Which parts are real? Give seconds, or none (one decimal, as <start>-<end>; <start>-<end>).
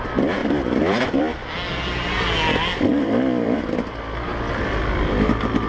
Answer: 0.0-0.4; 1.2-2.9; 3.9-5.7